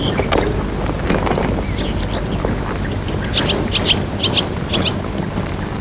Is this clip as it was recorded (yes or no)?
yes